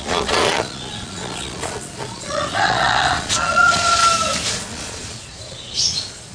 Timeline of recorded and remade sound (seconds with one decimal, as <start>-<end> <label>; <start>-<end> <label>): 0.0-4.0 remade; 4.0-4.5 recorded; 4.5-6.3 remade